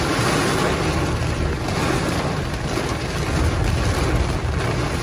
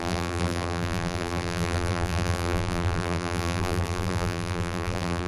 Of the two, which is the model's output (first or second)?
second